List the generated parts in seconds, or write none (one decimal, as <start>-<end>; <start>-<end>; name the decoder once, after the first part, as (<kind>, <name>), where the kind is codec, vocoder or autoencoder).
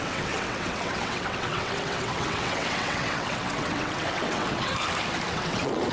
0.0-4.7 (vocoder, WaveNeXt); 5.3-5.9